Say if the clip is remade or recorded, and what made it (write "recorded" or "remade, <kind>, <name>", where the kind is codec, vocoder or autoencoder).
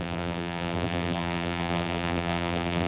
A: remade, vocoder, BigVGAN v2